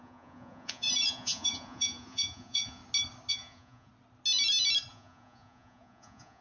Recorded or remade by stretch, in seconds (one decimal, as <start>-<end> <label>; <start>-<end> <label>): 0.0-2.8 remade; 2.8-3.3 recorded; 3.3-3.9 remade; 3.9-4.9 recorded; 4.9-6.4 remade